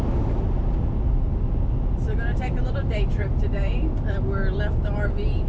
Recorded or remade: recorded